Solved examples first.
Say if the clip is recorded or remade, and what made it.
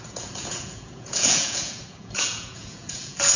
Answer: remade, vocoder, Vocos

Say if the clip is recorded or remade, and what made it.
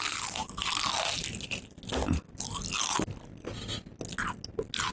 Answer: recorded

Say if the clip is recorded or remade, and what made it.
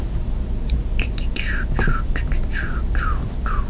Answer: recorded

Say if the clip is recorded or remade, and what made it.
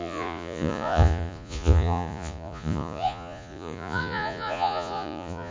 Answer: remade, vocoder, Vocos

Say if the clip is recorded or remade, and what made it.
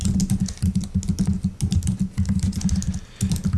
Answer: recorded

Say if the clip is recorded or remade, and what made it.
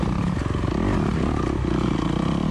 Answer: recorded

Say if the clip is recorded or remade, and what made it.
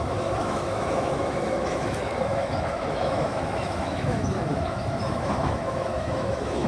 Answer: remade, autoencoder, DAC-VAE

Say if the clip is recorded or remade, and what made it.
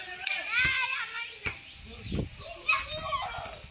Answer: recorded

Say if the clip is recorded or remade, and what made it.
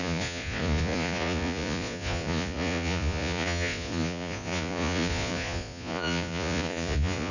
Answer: remade, vocoder, Vocos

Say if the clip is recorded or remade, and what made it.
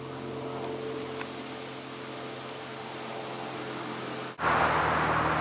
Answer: recorded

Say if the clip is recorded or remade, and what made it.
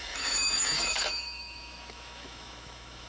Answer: remade, autoencoder, DAC-VAE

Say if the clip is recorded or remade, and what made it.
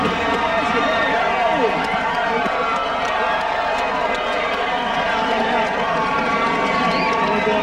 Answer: recorded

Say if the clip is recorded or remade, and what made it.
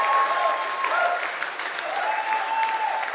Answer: recorded